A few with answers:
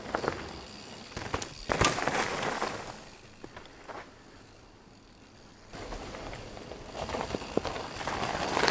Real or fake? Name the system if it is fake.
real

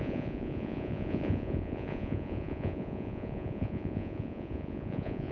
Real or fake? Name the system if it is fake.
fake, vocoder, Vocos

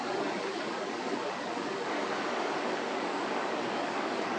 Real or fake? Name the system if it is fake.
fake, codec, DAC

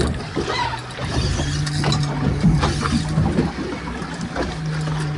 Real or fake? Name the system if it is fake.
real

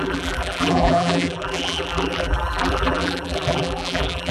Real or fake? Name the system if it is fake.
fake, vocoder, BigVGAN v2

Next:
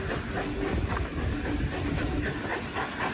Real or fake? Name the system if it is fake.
real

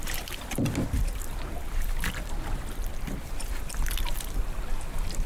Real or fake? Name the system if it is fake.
real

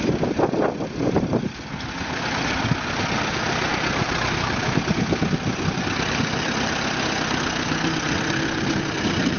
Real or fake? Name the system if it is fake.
real